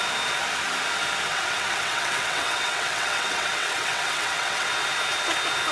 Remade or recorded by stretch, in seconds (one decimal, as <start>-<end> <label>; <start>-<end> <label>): 0.0-1.3 recorded; 1.3-4.7 remade; 4.7-5.7 recorded